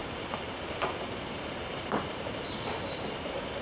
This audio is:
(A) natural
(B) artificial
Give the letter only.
B